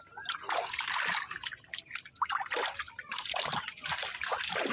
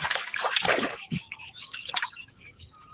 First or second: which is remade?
second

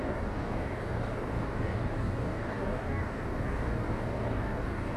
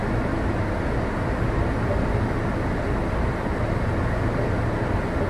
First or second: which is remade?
first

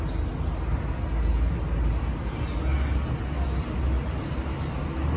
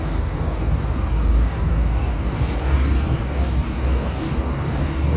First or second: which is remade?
second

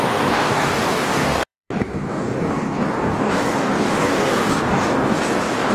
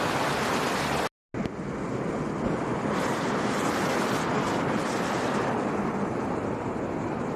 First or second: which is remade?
first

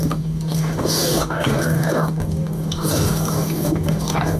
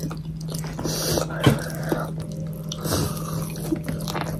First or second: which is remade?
first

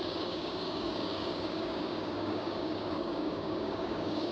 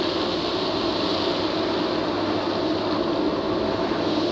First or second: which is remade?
first